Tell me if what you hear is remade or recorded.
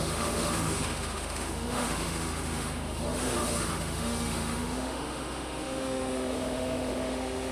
remade